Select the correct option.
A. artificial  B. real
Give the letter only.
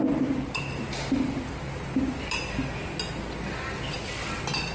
B